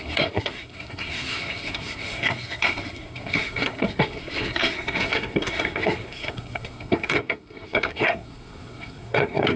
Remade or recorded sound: remade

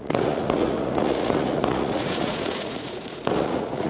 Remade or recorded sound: remade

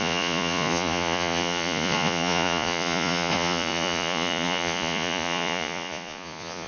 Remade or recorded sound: remade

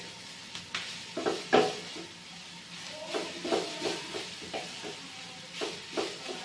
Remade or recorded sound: recorded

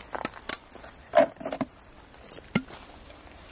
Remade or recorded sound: remade